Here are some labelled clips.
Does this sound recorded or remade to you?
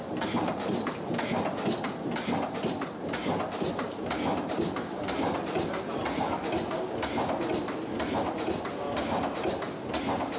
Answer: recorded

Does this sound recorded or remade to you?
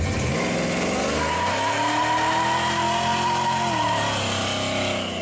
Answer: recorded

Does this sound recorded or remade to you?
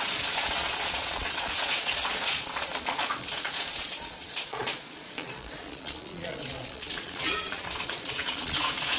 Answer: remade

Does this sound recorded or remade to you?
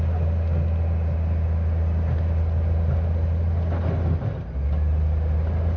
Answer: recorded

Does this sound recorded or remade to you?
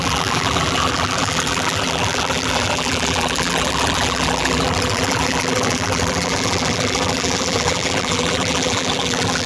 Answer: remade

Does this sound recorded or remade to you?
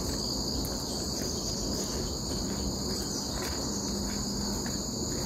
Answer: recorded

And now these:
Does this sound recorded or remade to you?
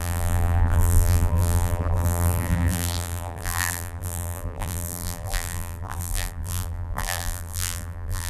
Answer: remade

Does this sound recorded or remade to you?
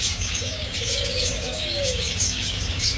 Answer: remade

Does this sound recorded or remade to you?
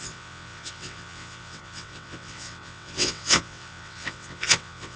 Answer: remade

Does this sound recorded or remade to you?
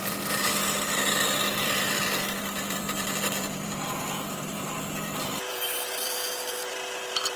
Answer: remade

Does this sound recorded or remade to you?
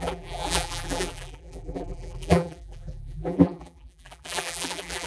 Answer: remade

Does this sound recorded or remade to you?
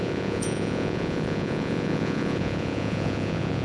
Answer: remade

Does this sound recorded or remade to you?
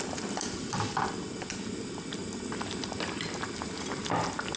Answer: recorded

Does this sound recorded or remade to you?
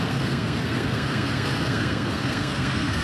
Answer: remade